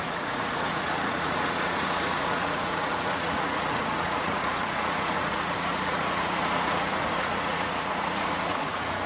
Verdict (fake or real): fake